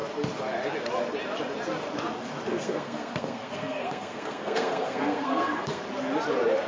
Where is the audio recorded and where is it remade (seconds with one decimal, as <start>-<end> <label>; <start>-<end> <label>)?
0.0-2.5 recorded; 2.5-5.8 remade; 5.8-6.7 recorded

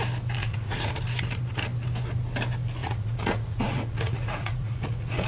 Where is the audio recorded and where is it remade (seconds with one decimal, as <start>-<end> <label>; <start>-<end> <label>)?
0.0-0.4 recorded; 0.4-1.0 remade; 1.0-2.8 recorded; 2.8-5.3 remade

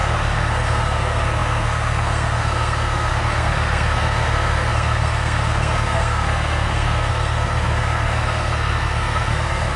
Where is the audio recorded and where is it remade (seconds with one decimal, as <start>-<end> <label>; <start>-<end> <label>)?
0.0-9.8 remade

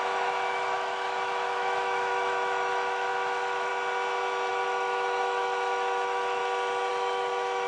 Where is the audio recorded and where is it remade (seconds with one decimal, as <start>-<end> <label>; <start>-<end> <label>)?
0.0-3.7 remade; 3.7-4.5 recorded; 4.5-6.4 remade; 6.4-6.9 recorded; 6.9-7.7 remade